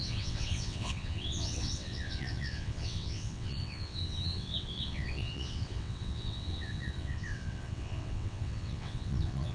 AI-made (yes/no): yes